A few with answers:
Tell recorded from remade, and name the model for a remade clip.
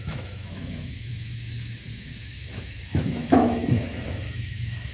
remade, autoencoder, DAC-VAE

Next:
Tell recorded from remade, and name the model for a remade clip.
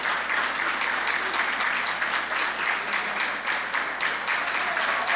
recorded